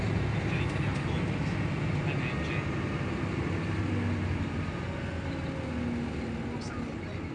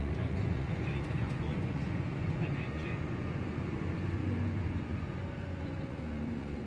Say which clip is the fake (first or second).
second